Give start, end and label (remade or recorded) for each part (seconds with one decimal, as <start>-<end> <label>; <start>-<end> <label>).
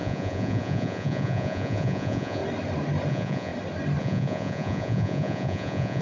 0.0-2.4 remade; 2.4-3.1 recorded; 3.1-3.5 remade; 3.5-4.0 recorded; 4.0-6.0 remade